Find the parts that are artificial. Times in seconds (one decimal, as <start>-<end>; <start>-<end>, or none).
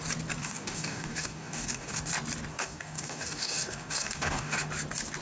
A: 0.4-2.1; 2.5-4.7